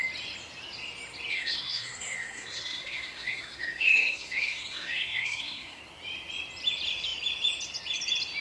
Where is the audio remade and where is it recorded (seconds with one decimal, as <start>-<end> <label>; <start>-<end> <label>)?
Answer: 0.0-1.3 recorded; 1.3-5.8 remade; 5.8-8.4 recorded